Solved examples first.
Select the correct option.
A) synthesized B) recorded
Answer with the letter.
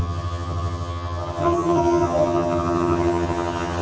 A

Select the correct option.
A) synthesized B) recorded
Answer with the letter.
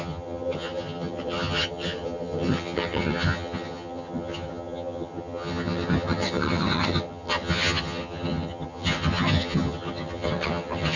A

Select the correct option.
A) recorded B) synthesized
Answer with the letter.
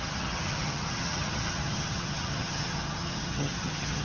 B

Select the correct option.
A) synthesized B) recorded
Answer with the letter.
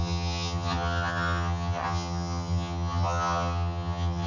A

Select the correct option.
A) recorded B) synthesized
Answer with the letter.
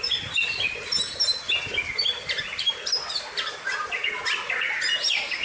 A